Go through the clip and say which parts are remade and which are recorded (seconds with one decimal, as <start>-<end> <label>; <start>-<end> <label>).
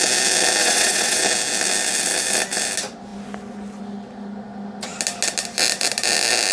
0.0-0.6 recorded; 0.6-1.2 remade; 1.2-6.5 recorded